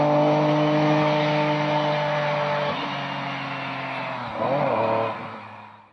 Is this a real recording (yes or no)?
yes